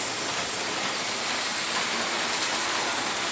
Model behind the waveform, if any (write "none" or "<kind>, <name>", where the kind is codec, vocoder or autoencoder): none